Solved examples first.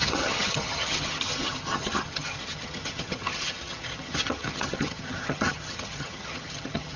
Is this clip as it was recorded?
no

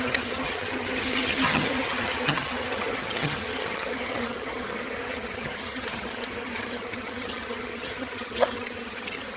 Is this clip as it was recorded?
no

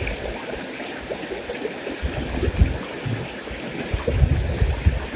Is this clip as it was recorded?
yes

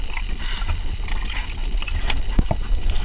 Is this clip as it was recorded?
yes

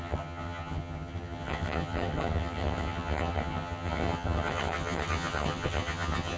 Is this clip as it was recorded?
no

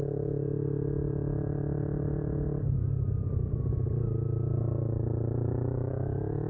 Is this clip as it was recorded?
yes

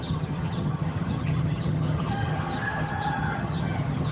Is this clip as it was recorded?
no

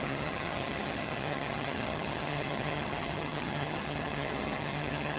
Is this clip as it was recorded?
no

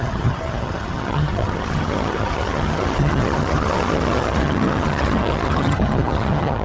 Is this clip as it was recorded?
no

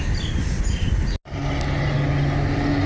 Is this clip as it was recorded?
yes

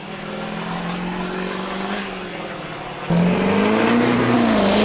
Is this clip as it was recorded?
yes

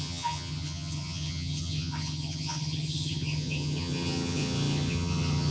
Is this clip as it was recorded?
no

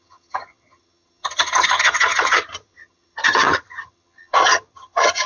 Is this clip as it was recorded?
no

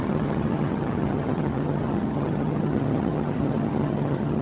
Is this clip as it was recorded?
no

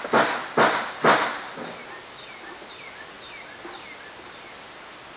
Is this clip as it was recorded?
yes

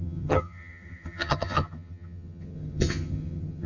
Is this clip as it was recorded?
no